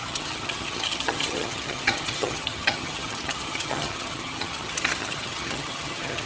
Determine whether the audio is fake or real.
fake